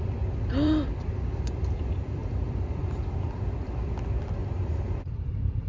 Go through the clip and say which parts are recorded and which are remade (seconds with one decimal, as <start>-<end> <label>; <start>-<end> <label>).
0.0-4.4 recorded; 4.4-5.0 remade; 5.0-5.7 recorded